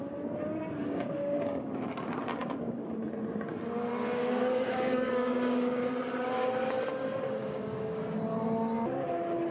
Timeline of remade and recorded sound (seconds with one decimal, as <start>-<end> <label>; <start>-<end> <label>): 0.0-0.8 recorded; 0.8-1.9 remade; 1.9-2.4 recorded; 2.4-2.9 remade; 2.9-3.9 recorded; 3.9-5.9 remade; 5.9-7.4 recorded; 7.4-8.0 remade; 8.0-9.5 recorded